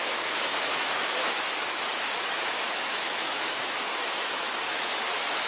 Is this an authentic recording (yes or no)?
no